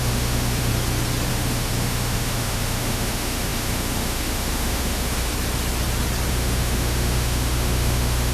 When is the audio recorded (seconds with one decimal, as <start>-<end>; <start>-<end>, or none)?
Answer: 0.7-1.3; 5.3-6.3

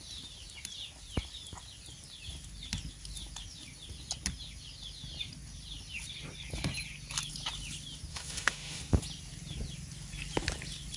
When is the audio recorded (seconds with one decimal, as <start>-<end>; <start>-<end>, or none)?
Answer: 0.0-8.1; 8.8-11.0

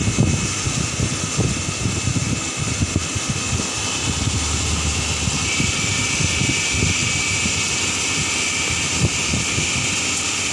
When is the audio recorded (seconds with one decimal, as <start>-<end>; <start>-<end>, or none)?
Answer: 0.0-10.5

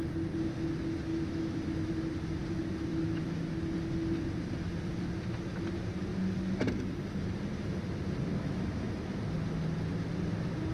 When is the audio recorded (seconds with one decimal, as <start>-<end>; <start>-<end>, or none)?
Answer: 0.0-1.1; 1.9-2.9; 3.5-8.3; 9.2-10.7